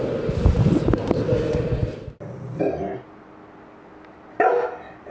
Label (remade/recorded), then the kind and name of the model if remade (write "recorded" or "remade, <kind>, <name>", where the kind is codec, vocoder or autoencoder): recorded